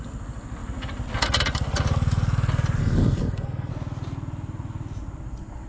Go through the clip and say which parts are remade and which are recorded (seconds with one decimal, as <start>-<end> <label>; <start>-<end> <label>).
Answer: 0.0-2.8 recorded; 2.8-3.7 remade; 3.7-5.7 recorded